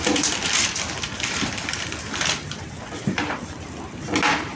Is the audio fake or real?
real